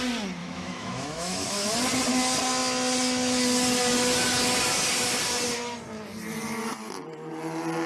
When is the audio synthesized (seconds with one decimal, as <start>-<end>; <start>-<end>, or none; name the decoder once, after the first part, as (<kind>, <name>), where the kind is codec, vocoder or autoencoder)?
0.4-1.7 (autoencoder, DAC-VAE)